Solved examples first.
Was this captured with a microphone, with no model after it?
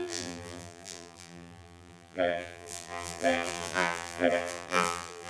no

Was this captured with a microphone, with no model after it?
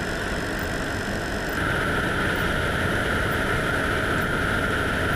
yes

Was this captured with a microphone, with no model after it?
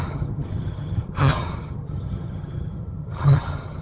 no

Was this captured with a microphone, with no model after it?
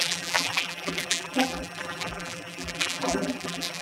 no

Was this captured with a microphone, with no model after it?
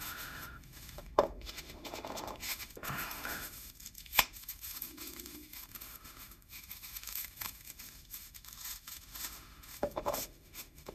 no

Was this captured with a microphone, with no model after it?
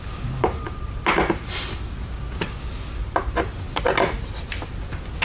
yes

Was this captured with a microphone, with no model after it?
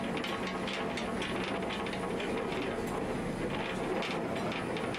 yes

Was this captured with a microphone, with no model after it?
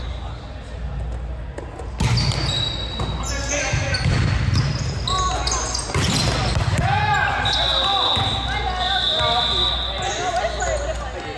yes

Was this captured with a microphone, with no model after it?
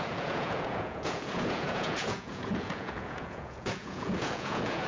no